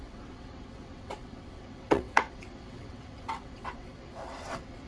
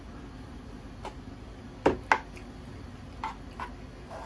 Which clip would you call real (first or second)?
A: second